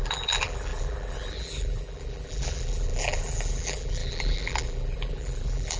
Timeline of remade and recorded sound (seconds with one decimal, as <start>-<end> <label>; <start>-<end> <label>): 0.0-5.8 remade